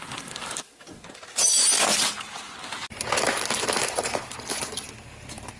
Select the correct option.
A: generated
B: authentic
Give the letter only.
B